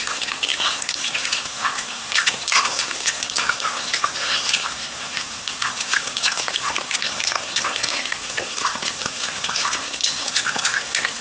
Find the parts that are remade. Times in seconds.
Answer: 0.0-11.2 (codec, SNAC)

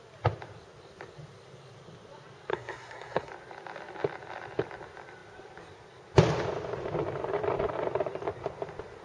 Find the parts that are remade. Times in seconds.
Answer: 2.5-3.3 (codec, SNAC)